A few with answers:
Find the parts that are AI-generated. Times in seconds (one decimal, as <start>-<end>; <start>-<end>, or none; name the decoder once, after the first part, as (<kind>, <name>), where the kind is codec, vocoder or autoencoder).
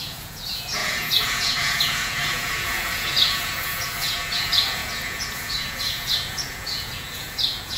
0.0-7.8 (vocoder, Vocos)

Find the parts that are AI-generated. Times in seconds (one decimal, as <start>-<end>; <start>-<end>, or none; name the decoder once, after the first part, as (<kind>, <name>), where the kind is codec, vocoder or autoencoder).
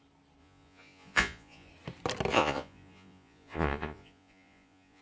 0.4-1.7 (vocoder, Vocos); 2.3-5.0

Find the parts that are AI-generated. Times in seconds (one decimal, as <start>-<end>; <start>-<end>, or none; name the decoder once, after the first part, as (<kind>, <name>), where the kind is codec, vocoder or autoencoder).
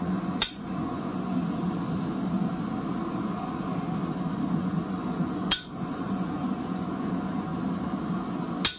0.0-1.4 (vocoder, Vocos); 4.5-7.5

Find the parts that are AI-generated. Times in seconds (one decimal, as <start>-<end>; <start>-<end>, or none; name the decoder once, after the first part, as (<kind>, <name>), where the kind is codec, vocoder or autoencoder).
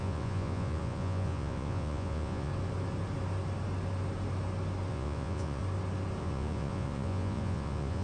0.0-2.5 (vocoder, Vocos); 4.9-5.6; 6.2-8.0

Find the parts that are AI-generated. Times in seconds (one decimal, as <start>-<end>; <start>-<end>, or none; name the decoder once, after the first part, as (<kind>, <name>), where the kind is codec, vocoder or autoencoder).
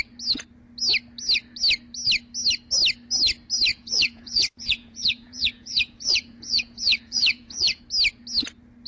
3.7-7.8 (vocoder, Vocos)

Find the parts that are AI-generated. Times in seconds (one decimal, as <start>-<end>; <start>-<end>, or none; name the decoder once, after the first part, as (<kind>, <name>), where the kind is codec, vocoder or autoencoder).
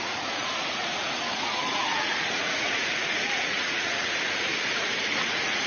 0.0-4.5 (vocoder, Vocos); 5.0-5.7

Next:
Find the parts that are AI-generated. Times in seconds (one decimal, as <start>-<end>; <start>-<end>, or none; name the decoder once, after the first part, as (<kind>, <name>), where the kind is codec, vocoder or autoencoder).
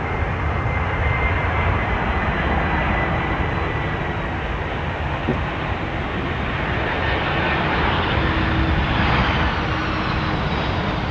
none